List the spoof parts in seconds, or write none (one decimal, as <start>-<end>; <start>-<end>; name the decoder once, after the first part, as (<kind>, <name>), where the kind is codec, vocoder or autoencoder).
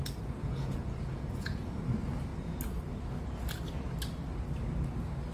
0.4-1.8 (vocoder, Vocos)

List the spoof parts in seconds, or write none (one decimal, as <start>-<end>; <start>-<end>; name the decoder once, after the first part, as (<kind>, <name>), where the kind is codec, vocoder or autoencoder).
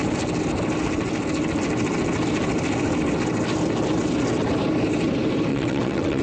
5.5-6.2 (vocoder, WaveNeXt)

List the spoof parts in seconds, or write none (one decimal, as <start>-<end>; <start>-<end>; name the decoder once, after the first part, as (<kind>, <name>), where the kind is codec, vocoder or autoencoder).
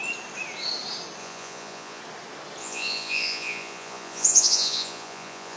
1.2-2.0 (vocoder, Vocos); 2.6-5.6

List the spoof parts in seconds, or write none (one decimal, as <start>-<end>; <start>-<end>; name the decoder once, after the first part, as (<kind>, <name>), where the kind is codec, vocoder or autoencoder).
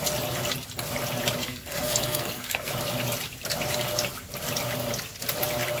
1.4-2.7 (codec, SNAC)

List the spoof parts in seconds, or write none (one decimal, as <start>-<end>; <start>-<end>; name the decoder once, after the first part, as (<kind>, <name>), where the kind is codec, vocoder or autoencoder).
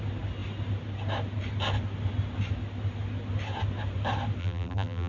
4.4-5.1 (vocoder, BigVGAN v2)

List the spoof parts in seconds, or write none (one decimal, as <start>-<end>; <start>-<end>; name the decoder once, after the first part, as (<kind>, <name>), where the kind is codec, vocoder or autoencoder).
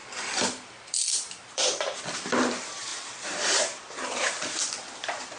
0.0-5.4 (vocoder, BigVGAN v2)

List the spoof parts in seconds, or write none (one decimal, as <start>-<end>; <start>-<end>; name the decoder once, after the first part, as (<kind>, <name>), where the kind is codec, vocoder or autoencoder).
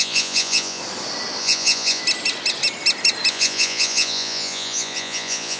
0.0-0.8 (vocoder, Vocos); 1.4-2.0; 3.3-5.6